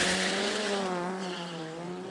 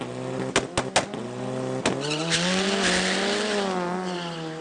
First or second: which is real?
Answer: second